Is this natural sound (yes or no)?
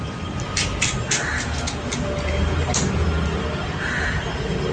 yes